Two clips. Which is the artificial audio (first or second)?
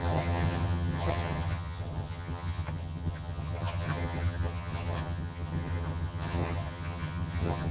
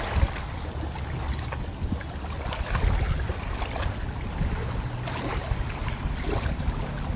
first